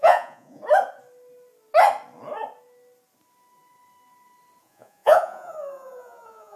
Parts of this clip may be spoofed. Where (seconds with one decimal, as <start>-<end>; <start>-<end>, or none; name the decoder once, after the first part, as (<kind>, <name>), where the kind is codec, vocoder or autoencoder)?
0.0-0.6 (vocoder, Vocos); 4.6-6.6